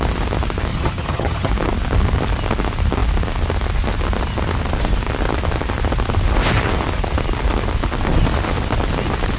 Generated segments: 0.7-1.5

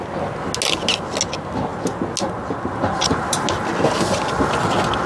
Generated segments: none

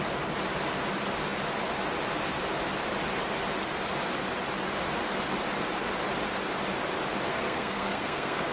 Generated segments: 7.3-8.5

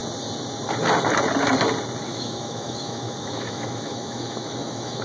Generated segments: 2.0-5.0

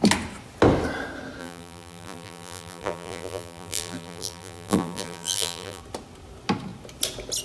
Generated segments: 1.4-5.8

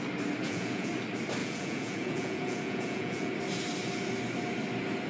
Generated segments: 0.4-0.9; 1.4-3.3

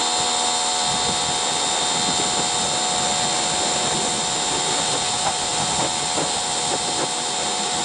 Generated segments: none

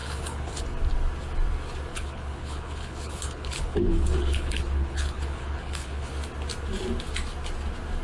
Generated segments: 0.0-0.6; 1.9-6.1